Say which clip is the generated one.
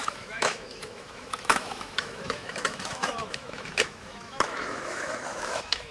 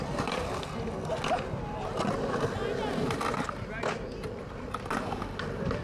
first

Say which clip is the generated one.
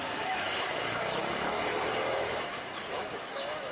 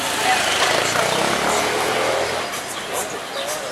first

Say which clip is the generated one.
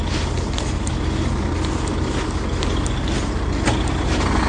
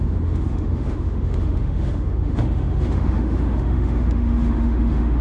second